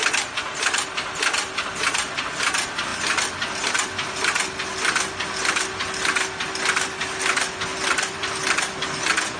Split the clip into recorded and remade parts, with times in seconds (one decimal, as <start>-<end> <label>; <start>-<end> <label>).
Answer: 0.0-7.7 recorded; 7.7-8.3 remade; 8.3-9.4 recorded